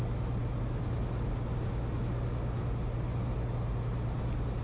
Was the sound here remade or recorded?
recorded